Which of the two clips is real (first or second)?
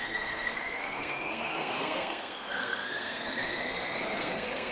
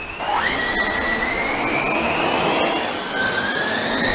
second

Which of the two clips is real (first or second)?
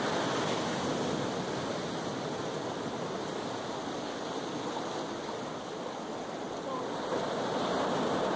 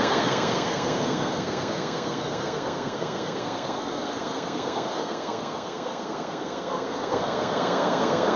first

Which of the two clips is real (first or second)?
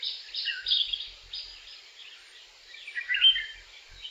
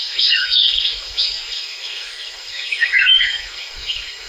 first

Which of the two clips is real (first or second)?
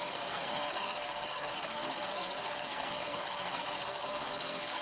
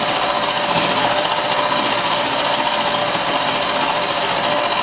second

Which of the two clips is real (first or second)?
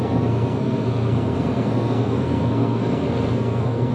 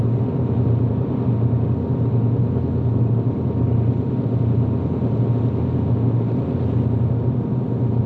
second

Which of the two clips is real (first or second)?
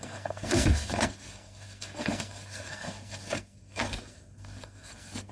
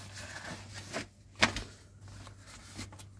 second